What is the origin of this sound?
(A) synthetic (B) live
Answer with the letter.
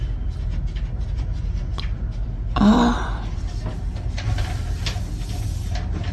B